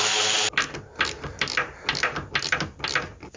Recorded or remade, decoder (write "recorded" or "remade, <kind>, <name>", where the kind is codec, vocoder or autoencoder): recorded